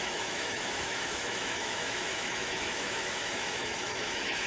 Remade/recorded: remade